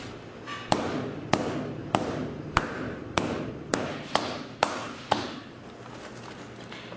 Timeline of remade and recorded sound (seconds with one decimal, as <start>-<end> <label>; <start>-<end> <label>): 0.0-1.8 recorded; 1.8-3.5 remade; 3.5-4.8 recorded; 4.8-6.1 remade; 6.1-7.0 recorded